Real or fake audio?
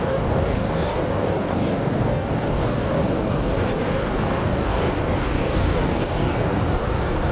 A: fake